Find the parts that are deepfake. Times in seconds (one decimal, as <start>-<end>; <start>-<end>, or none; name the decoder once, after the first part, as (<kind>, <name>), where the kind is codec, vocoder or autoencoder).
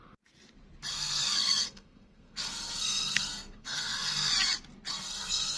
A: 0.9-4.3 (codec, SNAC); 4.9-5.6